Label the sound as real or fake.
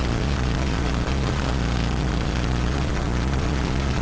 fake